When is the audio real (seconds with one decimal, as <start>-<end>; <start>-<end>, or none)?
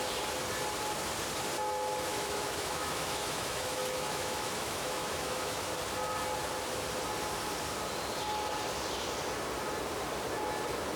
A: 0.0-2.1; 5.7-11.0